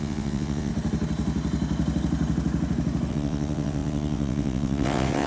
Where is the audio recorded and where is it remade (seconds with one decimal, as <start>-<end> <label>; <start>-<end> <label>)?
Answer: 0.0-0.7 remade; 0.7-3.1 recorded; 3.1-5.3 remade